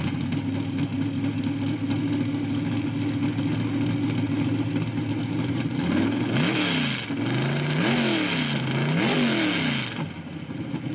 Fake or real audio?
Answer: real